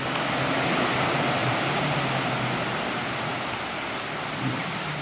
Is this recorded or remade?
recorded